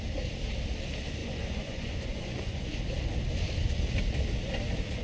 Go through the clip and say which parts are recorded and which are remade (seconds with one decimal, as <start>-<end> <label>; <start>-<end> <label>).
0.0-1.2 recorded; 1.2-2.8 remade; 2.8-5.0 recorded